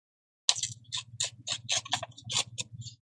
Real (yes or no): yes